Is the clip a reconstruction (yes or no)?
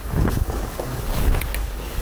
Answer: yes